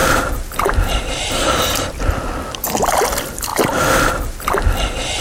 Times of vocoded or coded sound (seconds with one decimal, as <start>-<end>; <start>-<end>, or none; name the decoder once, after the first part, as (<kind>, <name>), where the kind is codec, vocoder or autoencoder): 0.0-2.1 (vocoder, BigVGAN v2)